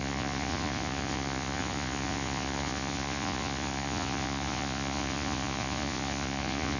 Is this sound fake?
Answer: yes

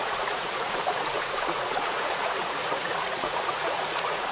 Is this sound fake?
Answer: yes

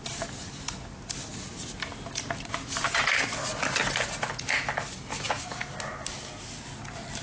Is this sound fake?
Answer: no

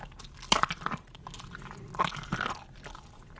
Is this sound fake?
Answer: no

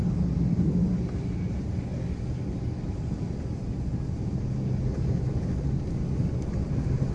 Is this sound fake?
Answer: no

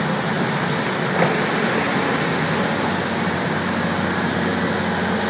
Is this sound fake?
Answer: no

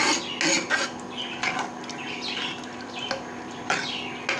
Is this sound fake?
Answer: no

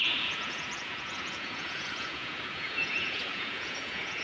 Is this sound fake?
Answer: yes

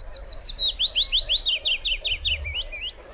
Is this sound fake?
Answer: no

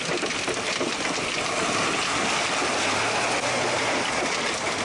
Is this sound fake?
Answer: no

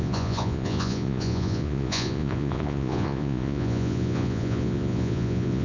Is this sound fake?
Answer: yes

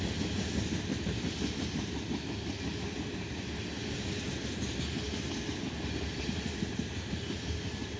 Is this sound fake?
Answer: no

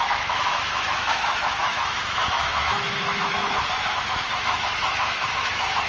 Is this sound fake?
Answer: yes